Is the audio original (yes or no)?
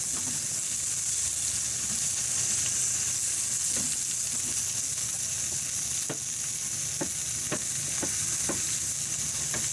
yes